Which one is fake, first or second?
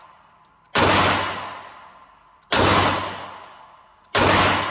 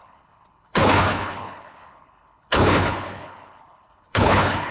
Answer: second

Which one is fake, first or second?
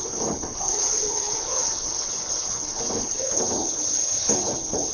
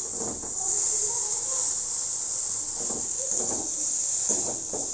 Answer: first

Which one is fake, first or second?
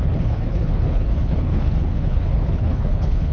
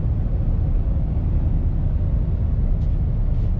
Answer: first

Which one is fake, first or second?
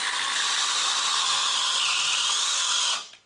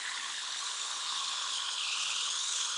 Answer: second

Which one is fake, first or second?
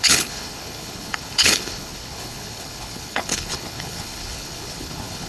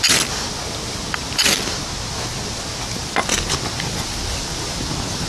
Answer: first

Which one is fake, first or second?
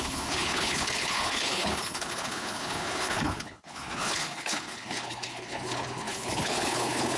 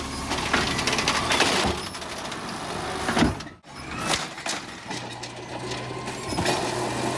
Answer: first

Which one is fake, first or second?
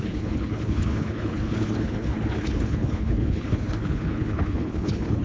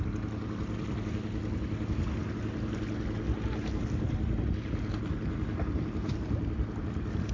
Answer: first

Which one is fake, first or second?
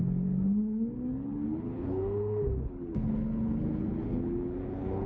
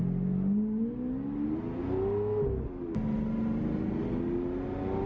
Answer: first